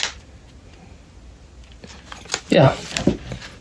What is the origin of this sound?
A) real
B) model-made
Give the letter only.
A